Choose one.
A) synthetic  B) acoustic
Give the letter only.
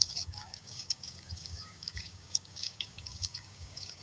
A